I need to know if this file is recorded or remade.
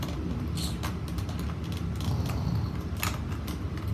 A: recorded